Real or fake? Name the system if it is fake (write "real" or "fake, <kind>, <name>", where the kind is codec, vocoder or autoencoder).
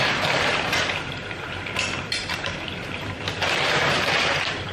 fake, vocoder, BigVGAN v2